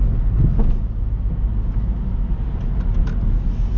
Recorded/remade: recorded